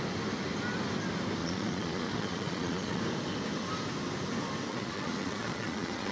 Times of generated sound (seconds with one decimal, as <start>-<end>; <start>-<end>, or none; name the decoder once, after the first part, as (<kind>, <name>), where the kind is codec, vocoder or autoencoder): 1.4-3.0 (vocoder, Vocos); 4.7-6.1